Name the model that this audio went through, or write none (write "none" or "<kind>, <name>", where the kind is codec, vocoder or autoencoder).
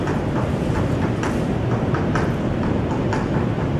none